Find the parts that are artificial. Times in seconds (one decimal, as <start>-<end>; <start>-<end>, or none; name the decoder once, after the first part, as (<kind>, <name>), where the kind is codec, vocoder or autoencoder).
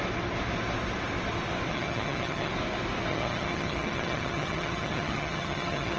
1.7-2.5 (vocoder, HiFi-GAN); 3.1-6.0